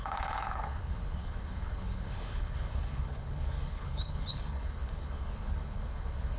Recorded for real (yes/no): no